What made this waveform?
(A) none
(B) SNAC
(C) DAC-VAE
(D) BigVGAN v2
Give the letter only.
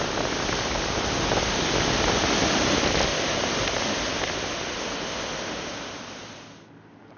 A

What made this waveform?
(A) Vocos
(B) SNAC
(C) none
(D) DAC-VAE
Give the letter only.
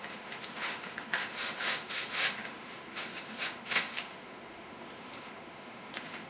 D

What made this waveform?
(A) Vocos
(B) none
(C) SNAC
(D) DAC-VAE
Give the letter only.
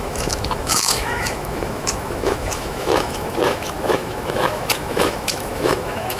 D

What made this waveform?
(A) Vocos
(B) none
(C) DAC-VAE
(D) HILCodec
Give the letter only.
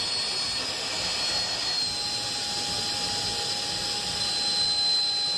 B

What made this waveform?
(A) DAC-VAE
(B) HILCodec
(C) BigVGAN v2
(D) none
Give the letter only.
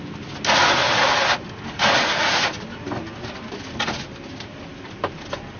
D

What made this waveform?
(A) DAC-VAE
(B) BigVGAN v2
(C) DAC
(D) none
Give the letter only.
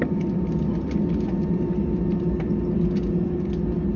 D